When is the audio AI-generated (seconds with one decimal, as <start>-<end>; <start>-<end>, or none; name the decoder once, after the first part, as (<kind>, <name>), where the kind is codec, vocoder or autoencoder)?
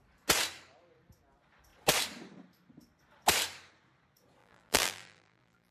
4.4-5.7 (vocoder, BigVGAN v2)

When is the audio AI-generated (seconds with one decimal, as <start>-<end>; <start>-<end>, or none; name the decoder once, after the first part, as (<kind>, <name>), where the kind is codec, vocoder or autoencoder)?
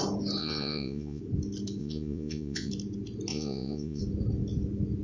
0.4-1.2 (vocoder, Vocos); 1.8-2.7; 3.3-4.0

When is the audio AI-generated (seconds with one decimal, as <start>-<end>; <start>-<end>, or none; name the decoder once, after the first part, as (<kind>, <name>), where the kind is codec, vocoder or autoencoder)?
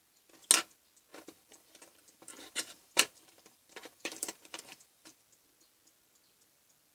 1.1-5.2 (vocoder, BigVGAN v2)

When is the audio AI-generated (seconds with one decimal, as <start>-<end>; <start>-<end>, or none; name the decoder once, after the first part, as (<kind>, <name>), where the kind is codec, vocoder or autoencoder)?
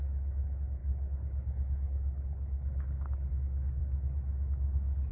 0.0-3.8 (codec, HILCodec)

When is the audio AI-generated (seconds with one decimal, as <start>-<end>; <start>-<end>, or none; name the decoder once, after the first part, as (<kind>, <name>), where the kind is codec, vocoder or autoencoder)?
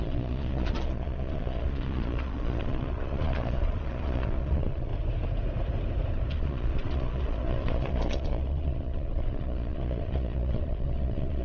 0.0-4.9 (vocoder, Vocos); 6.3-11.4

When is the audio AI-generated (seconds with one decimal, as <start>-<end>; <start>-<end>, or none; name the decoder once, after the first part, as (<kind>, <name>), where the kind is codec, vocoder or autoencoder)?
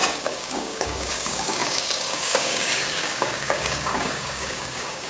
0.0-5.1 (codec, DAC)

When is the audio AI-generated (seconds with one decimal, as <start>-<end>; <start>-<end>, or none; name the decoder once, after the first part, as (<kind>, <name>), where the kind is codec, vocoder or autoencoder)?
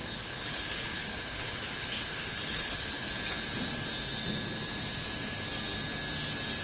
0.0-3.1 (codec, HILCodec)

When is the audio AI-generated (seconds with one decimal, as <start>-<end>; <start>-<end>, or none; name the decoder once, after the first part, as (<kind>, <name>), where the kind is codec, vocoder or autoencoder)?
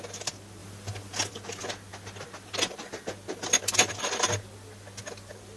none